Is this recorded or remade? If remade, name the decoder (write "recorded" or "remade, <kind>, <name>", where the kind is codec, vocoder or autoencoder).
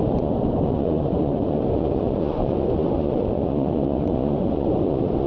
remade, vocoder, Vocos